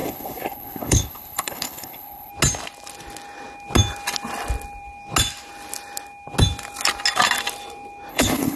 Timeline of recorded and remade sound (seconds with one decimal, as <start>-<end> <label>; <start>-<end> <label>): 0.0-2.3 remade; 2.3-8.1 recorded; 8.1-8.6 remade